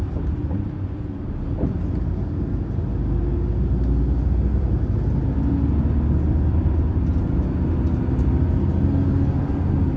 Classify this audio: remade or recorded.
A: recorded